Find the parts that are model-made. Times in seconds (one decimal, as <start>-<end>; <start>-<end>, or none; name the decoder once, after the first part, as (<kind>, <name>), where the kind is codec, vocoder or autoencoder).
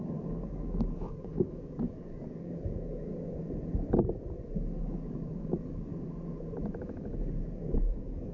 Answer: 0.0-3.1 (codec, DAC); 4.8-5.9; 6.8-8.3